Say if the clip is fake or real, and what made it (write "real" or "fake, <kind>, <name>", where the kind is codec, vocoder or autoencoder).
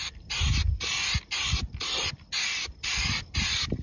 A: real